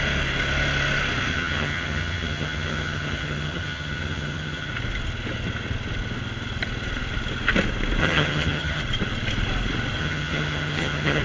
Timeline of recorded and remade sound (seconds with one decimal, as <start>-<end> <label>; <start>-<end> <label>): 0.0-1.3 recorded; 1.3-4.7 remade; 4.7-8.0 recorded; 8.0-8.8 remade; 8.8-10.0 recorded; 10.0-11.2 remade